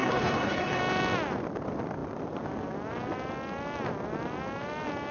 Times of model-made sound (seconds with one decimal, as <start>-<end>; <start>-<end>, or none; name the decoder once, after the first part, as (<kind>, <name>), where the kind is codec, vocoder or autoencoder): 0.0-0.8 (codec, HILCodec)